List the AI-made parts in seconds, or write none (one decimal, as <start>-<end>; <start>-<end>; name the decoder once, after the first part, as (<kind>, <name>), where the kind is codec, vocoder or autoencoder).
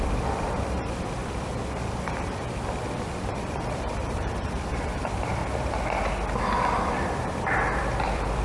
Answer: 0.0-1.2 (vocoder, BigVGAN v2); 3.1-5.4; 8.0-8.4